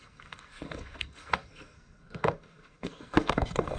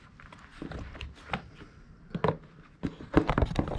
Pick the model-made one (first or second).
first